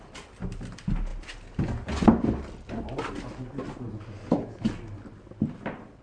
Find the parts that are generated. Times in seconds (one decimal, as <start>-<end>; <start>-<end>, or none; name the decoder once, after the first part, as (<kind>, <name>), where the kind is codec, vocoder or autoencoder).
none

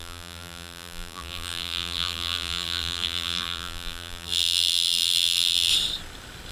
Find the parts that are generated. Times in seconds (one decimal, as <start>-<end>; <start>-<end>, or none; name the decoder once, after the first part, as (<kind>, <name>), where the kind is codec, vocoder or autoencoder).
0.0-5.7 (vocoder, BigVGAN v2)

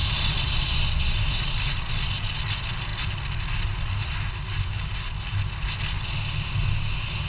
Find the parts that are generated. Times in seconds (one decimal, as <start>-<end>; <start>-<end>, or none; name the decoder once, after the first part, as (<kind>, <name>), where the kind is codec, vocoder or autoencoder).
0.0-0.5 (vocoder, BigVGAN v2)

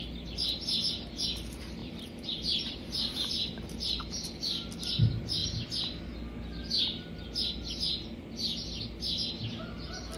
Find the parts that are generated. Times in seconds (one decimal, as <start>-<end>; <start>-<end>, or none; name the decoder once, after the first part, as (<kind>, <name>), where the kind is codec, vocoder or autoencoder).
1.8-4.9 (vocoder, BigVGAN v2); 5.4-6.0

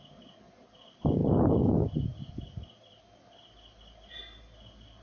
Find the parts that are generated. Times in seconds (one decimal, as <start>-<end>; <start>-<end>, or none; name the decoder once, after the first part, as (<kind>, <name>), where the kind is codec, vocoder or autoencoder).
none